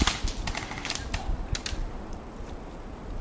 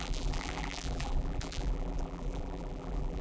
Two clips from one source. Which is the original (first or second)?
first